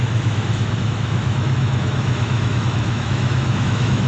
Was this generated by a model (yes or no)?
yes